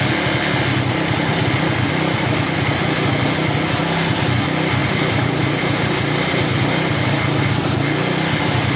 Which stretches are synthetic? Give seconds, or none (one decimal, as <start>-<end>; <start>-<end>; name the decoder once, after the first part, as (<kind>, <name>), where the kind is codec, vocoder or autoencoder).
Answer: 4.8-7.5 (vocoder, BigVGAN v2)